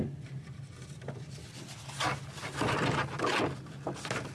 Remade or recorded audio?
recorded